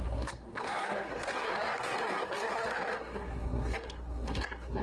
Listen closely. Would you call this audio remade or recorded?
remade